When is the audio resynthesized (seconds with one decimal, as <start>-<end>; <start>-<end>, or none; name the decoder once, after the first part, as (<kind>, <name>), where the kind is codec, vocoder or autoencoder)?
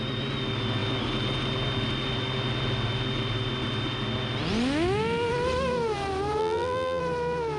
6.4-7.0 (vocoder, BigVGAN v2)